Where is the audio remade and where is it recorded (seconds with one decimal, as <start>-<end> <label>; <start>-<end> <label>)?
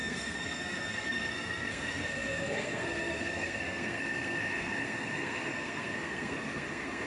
0.0-7.1 remade